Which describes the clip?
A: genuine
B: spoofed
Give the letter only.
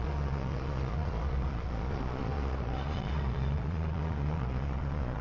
B